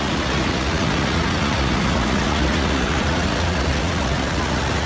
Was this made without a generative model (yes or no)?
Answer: no